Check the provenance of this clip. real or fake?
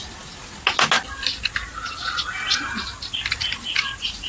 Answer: real